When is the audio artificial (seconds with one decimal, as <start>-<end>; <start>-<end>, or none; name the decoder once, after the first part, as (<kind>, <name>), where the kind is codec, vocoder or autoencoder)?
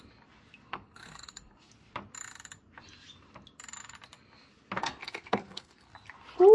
0.7-1.7 (codec, SNAC); 4.8-5.9